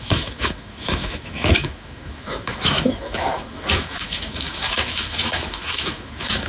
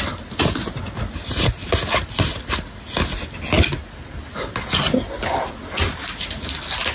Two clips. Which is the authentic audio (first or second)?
second